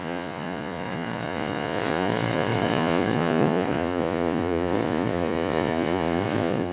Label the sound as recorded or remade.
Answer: remade